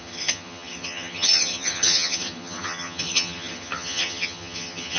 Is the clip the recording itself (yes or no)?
no